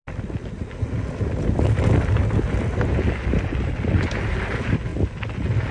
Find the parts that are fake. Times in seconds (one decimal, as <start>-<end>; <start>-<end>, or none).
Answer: none